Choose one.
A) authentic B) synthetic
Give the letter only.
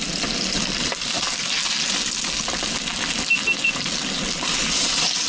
A